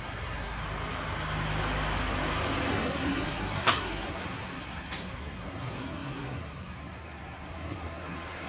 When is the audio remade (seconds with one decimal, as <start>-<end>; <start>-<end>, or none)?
0.0-0.6; 2.7-8.5